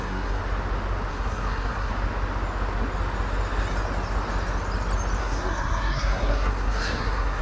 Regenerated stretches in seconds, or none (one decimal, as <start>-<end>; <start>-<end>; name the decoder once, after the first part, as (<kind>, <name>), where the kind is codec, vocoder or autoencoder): 0.0-0.4 (codec, SNAC); 1.1-1.9; 5.2-7.4

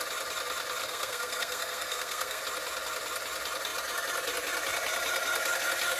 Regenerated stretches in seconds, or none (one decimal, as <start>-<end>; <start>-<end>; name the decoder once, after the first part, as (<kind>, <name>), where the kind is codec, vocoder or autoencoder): 0.8-2.4 (codec, SNAC)

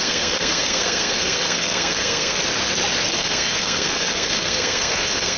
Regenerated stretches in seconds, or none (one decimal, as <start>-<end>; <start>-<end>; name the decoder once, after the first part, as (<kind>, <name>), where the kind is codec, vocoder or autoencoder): 0.0-2.4 (codec, SNAC); 3.1-5.4

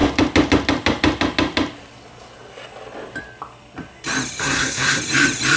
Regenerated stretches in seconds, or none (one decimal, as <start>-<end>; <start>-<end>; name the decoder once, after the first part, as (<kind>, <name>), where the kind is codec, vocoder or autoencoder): 4.4-5.0 (codec, SNAC)

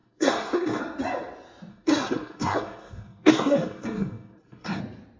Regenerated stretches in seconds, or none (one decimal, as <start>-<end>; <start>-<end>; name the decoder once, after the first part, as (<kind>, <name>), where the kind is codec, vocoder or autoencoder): 0.0-0.8 (codec, SNAC); 1.7-4.8

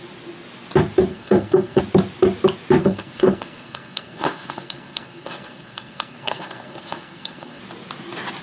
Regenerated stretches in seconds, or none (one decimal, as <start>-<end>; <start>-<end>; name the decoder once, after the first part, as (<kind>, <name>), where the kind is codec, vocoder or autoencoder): 1.1-1.8 (codec, SNAC); 2.8-7.6

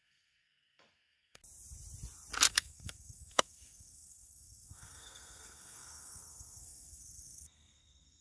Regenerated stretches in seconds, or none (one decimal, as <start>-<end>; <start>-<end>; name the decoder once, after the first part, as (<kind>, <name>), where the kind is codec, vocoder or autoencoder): 0.0-1.4 (codec, SNAC); 2.5-8.2